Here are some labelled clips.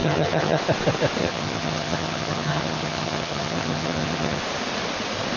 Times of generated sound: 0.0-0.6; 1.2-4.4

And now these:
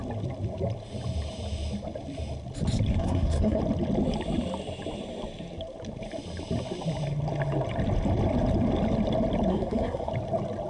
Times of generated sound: 2.9-3.6; 9.5-10.1

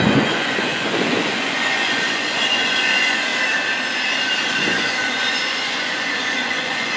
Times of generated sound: 0.0-3.3; 4.5-7.0

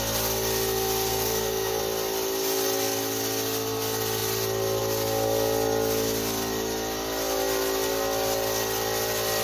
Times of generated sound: 1.1-1.8

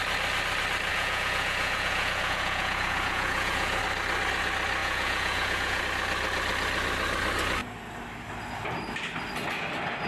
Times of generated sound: 0.9-3.8; 4.8-5.8

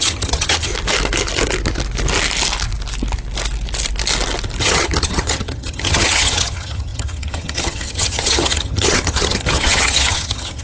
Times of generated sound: 0.0-0.7; 4.6-10.6